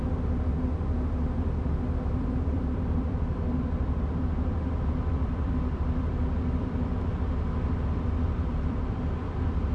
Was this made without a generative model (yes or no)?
no